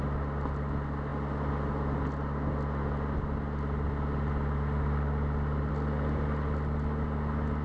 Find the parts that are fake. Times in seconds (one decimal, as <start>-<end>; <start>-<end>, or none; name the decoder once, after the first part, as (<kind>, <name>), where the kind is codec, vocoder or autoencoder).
none